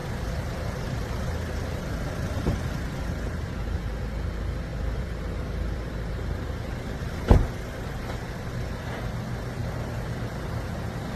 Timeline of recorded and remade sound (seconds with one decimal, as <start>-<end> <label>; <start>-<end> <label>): 0.0-3.4 remade; 3.4-4.7 recorded; 4.7-7.1 remade; 7.1-9.6 recorded; 9.6-11.2 remade